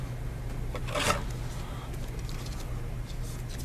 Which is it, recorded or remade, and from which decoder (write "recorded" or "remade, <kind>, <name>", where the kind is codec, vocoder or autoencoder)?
recorded